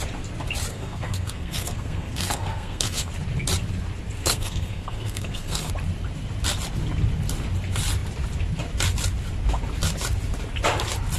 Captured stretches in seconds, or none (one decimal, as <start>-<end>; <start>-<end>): 0.0-0.7; 3.1-4.2; 5.7-11.2